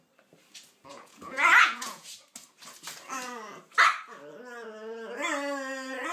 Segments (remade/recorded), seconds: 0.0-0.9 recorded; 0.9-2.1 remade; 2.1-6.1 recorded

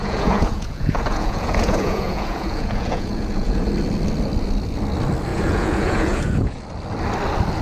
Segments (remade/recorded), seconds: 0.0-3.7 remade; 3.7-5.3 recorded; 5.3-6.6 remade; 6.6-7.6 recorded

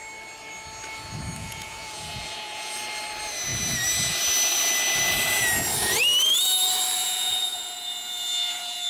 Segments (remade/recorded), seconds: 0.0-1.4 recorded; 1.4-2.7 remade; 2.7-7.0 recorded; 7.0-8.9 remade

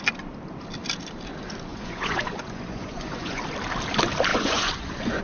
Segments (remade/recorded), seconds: 0.0-1.7 recorded; 1.7-3.4 remade; 3.4-4.3 recorded; 4.3-5.2 remade